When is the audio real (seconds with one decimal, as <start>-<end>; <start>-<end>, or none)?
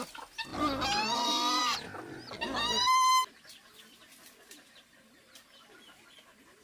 0.0-6.6